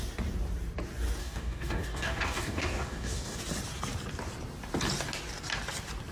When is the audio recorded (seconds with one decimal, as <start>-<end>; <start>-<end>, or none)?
0.0-1.2; 3.4-6.1